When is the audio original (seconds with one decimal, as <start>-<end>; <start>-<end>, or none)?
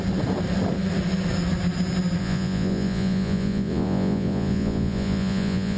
0.0-2.2